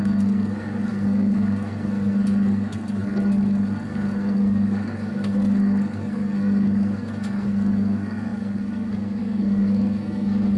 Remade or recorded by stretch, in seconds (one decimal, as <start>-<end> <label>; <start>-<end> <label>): 0.0-10.6 remade